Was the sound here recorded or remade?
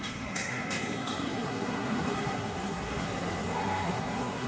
remade